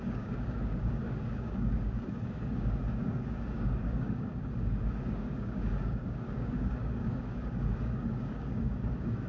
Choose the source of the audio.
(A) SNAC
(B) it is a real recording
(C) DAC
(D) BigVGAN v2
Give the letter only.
C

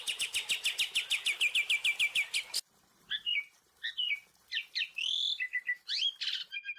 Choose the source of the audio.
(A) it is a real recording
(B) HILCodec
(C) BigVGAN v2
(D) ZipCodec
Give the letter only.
A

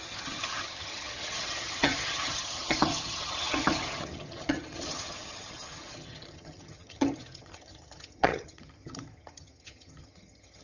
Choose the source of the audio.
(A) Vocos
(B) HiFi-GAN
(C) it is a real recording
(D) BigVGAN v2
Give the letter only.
B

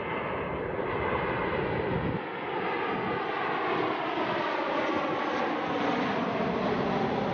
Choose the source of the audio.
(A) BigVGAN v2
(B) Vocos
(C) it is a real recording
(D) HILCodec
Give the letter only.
C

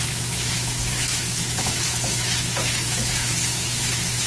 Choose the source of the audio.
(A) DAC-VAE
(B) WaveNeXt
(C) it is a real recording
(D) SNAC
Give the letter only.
A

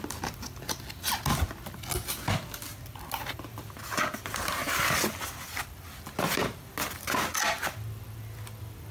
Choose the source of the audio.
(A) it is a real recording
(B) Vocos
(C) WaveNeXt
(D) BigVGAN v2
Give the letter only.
A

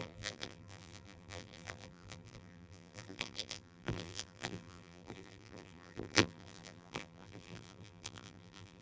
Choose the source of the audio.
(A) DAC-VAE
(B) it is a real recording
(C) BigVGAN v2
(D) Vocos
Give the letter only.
C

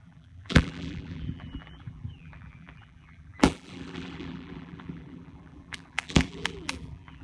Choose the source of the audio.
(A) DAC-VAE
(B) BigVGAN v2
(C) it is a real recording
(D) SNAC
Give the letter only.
B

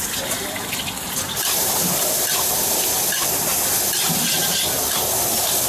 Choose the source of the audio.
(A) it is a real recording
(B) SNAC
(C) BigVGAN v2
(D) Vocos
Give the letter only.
A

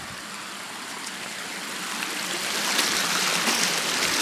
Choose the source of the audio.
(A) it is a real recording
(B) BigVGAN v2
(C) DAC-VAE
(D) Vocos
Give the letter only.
A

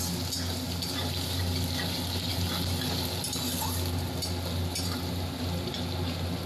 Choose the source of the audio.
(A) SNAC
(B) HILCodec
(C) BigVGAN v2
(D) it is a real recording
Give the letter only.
D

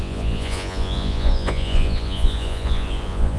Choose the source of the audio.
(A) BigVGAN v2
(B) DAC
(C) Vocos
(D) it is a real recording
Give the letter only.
C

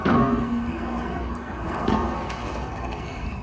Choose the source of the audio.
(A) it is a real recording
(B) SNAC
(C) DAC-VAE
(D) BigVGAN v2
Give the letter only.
B